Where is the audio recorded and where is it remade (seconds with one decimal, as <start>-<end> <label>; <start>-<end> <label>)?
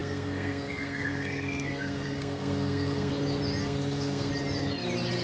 0.0-3.1 remade; 3.1-3.6 recorded; 3.6-4.3 remade; 4.3-5.2 recorded